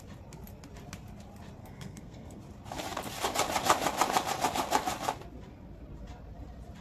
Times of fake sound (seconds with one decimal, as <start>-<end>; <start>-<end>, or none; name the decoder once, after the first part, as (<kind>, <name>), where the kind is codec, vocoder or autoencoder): 1.6-2.4 (codec, SNAC)